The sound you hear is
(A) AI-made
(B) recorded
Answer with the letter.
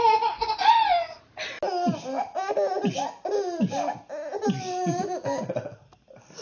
B